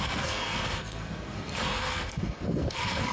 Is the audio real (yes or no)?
no